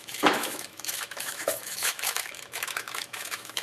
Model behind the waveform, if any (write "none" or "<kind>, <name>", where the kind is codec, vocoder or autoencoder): autoencoder, DAC-VAE